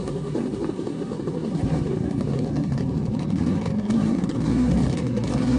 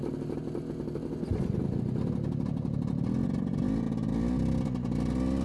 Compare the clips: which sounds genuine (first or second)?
second